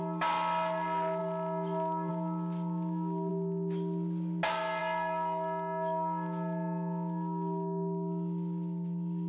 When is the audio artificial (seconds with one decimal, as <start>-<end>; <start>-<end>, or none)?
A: none